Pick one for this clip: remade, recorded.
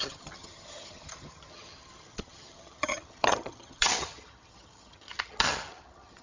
remade